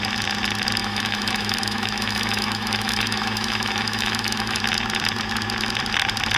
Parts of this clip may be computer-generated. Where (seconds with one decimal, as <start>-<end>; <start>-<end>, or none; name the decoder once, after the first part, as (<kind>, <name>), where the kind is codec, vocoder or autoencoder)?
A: 0.8-4.6 (autoencoder, DAC-VAE)

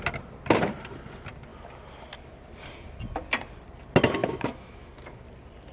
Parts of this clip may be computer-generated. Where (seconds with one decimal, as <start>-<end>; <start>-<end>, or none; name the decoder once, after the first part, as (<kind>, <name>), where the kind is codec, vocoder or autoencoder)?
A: 4.2-4.9 (autoencoder, DAC-VAE)

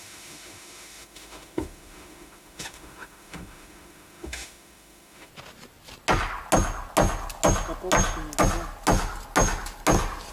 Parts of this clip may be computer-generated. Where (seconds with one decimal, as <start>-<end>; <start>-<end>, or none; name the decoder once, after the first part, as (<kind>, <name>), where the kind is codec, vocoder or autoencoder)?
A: 0.0-5.3 (autoencoder, DAC-VAE)

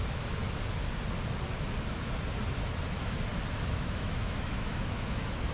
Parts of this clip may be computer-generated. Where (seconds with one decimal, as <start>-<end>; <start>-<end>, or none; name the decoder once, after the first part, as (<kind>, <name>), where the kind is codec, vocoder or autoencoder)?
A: 0.0-0.4 (autoencoder, DAC-VAE); 3.7-5.5

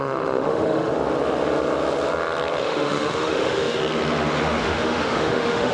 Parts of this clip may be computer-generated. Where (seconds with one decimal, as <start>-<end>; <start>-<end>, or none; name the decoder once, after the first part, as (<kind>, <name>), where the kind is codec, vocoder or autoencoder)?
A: 0.0-0.9 (autoencoder, DAC-VAE); 2.6-3.8; 4.6-5.7

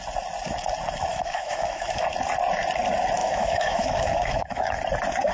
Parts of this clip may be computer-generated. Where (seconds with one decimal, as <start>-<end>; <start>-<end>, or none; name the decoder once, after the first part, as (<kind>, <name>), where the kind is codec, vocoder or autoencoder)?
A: 1.1-2.0 (autoencoder, DAC-VAE); 3.2-4.8

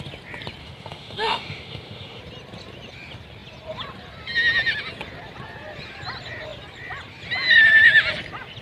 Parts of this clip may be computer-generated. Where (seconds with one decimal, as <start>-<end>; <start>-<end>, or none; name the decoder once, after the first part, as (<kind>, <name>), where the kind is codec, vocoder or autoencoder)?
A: 0.6-2.2 (autoencoder, DAC-VAE)

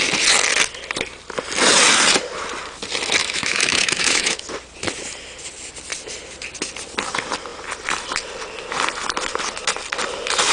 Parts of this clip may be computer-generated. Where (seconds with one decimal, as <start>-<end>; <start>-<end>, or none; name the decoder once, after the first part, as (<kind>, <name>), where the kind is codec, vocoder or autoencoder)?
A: 3.2-4.4 (autoencoder, DAC-VAE)